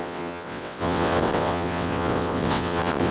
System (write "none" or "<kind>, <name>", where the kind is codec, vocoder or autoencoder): vocoder, WaveNeXt